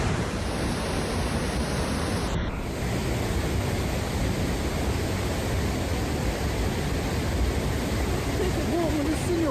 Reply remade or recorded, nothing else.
recorded